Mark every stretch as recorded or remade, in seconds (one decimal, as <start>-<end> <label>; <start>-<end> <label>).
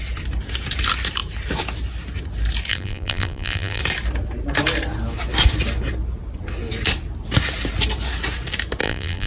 0.0-2.7 recorded; 2.7-3.8 remade; 3.8-8.8 recorded; 8.8-9.3 remade